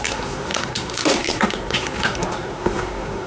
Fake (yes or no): yes